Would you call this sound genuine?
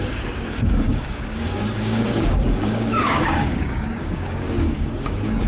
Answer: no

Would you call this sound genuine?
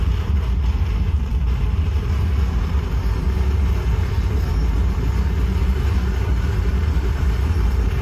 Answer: no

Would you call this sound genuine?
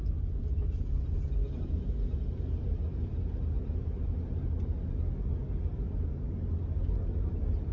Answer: yes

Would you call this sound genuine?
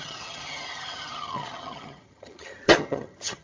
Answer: no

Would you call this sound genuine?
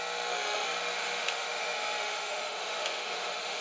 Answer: no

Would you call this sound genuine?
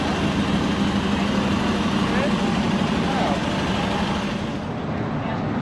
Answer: yes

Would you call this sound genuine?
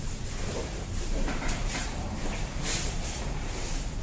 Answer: no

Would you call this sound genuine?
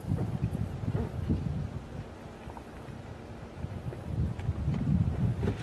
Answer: yes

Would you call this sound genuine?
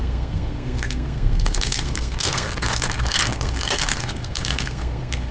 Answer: no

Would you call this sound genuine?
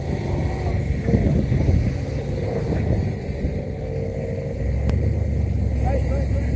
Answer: yes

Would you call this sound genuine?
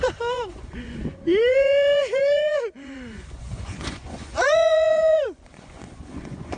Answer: no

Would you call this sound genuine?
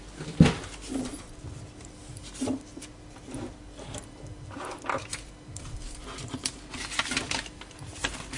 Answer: yes